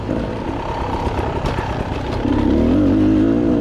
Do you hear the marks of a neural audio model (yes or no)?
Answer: no